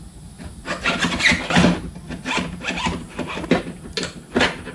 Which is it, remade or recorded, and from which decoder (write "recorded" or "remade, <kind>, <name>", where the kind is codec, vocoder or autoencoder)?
recorded